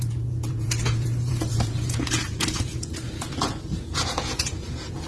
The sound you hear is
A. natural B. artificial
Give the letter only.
B